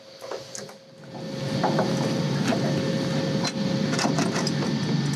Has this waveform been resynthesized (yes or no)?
no